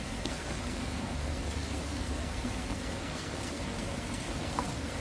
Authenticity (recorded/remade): remade